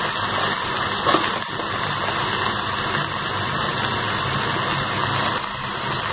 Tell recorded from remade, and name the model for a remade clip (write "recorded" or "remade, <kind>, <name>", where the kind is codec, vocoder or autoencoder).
recorded